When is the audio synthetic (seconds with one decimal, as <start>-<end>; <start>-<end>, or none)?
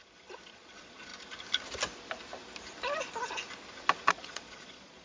0.0-1.1; 4.1-5.0